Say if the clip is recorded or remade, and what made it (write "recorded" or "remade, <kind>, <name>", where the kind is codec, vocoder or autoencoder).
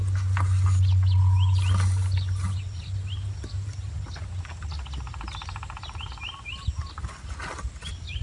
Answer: recorded